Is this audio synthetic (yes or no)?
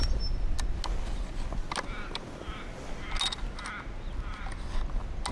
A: no